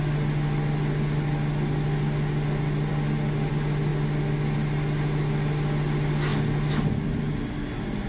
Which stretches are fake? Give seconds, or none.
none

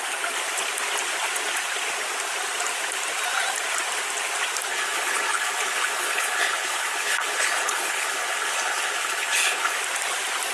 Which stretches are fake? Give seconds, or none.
4.7-9.8 (codec, HILCodec)

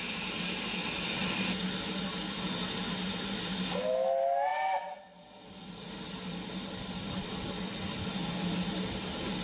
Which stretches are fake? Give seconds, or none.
none

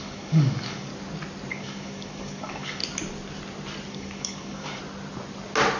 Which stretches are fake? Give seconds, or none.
0.0-0.9 (codec, DAC); 1.5-2.8; 3.9-4.8